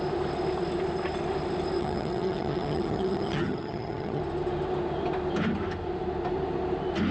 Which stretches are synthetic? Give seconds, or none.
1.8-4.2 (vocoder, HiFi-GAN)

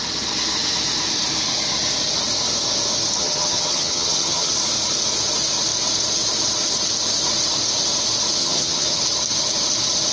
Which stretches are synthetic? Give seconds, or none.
3.2-4.5 (vocoder, HiFi-GAN); 8.4-9.0

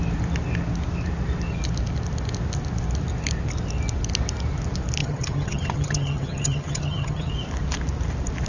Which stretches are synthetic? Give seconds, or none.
5.0-7.3 (vocoder, HiFi-GAN)